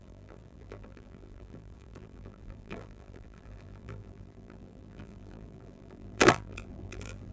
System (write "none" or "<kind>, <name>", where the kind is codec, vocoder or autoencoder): vocoder, BigVGAN v2